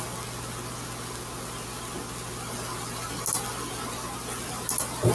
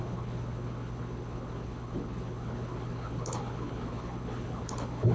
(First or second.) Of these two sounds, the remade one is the second